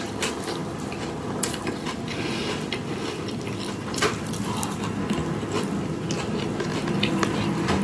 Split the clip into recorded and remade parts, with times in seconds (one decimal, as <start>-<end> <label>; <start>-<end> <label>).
0.0-7.8 recorded